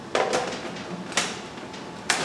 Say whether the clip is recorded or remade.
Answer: remade